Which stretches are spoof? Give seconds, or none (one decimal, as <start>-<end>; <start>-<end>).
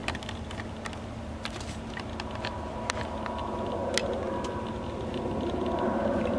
none